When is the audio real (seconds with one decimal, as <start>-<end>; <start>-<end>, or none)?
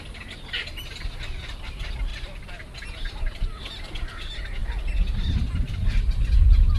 0.0-6.8